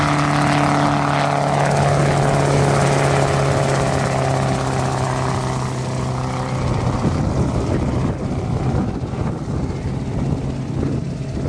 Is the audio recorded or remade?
recorded